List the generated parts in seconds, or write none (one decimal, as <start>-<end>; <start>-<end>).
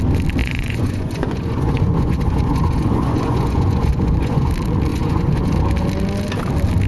0.4-4.5; 4.9-5.6